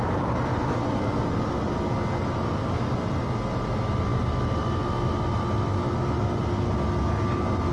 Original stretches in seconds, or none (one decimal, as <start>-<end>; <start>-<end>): 0.0-7.7